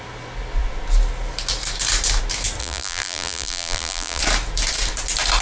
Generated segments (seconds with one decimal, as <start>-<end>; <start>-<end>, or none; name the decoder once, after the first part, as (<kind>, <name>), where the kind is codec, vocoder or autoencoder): 2.6-4.2 (vocoder, BigVGAN v2)